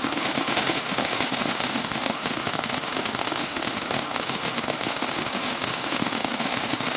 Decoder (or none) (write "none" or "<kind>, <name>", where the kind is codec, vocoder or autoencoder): autoencoder, DAC-VAE